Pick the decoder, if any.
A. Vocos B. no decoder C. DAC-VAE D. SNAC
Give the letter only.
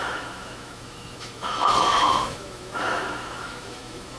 C